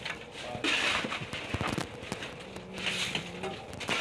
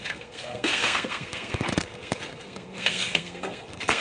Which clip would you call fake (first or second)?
second